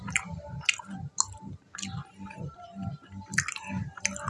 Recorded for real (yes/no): yes